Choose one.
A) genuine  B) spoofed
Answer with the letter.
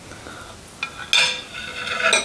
A